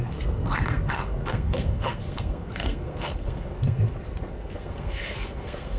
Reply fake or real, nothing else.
fake